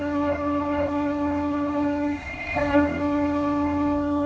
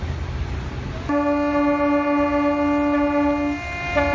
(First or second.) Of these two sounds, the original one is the second